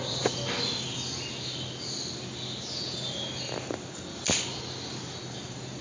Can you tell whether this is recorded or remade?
recorded